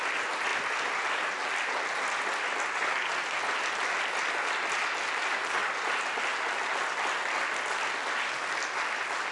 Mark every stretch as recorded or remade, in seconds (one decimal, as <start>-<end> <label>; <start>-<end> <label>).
0.0-9.3 recorded